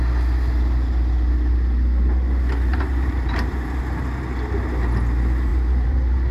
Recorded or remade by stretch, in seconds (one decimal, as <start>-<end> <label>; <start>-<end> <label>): 0.0-2.7 recorded; 2.7-3.8 remade; 3.8-5.5 recorded; 5.5-6.3 remade